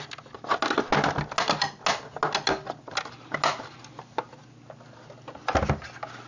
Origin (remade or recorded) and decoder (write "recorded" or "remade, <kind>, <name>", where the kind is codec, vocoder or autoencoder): recorded